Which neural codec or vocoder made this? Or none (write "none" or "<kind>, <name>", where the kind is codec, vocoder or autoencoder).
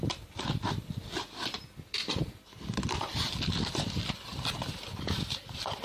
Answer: none